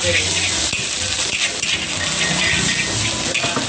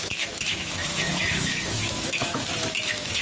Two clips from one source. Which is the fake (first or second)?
second